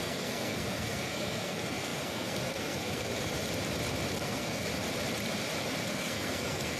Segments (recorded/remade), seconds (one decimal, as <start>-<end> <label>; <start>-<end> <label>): 0.0-3.1 remade; 3.1-4.1 recorded; 4.1-4.7 remade; 4.7-5.9 recorded; 5.9-6.8 remade